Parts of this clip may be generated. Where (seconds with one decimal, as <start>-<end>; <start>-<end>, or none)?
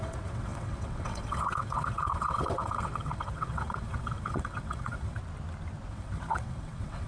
0.0-5.2; 5.9-7.1